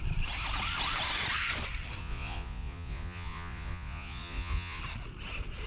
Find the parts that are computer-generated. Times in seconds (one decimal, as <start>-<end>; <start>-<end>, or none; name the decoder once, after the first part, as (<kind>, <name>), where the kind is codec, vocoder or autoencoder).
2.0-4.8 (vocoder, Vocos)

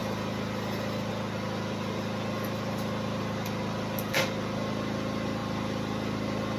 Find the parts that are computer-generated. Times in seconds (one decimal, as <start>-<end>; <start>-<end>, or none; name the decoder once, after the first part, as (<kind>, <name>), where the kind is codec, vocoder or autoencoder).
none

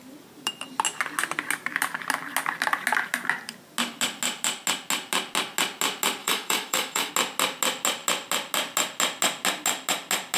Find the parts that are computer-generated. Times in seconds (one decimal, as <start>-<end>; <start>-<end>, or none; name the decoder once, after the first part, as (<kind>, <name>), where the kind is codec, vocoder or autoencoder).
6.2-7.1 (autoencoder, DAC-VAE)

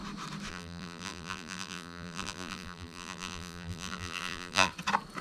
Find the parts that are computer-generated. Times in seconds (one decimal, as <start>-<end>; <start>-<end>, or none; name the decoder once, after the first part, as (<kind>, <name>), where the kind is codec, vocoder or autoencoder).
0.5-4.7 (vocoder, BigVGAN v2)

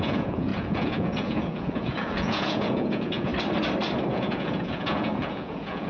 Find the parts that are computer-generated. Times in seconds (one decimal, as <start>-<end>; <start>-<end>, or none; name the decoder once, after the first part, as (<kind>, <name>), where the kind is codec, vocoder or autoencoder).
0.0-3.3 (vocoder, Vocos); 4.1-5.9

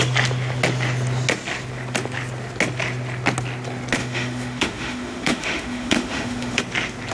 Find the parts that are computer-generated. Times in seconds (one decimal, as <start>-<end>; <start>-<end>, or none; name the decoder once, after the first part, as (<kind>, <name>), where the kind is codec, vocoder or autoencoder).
4.0-6.6 (autoencoder, DAC-VAE)

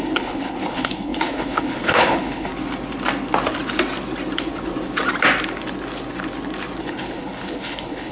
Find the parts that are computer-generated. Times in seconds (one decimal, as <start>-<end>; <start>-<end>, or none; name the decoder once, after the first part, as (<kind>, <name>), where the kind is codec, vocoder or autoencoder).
0.0-2.5 (codec, HILCodec); 6.8-8.1